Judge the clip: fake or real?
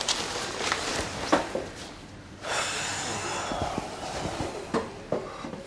real